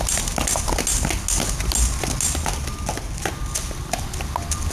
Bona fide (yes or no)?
yes